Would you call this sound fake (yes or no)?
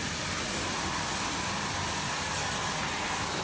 no